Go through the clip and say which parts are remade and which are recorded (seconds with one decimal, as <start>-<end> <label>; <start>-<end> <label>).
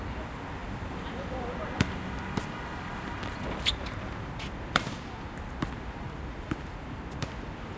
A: 0.0-7.8 remade